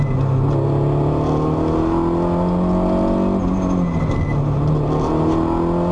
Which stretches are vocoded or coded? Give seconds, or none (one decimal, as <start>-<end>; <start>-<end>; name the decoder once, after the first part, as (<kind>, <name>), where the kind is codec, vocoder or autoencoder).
none